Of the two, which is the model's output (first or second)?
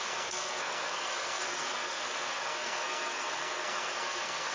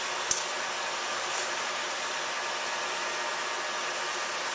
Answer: first